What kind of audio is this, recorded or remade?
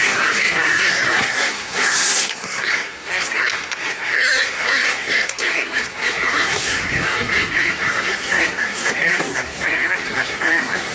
remade